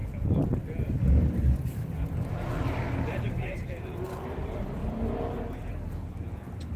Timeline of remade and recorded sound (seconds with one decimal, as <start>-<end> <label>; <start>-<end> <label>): 0.0-4.8 remade; 4.8-5.7 recorded; 5.7-6.8 remade